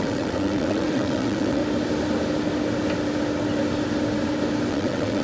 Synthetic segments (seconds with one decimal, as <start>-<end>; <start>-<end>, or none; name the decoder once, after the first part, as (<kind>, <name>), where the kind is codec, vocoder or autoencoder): 0.0-1.6 (vocoder, WaveNeXt); 4.7-5.2